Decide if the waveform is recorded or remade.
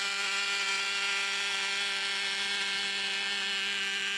recorded